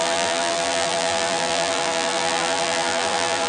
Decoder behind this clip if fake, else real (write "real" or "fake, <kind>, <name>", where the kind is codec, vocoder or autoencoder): fake, vocoder, BigVGAN v2